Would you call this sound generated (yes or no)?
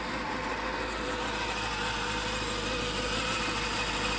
no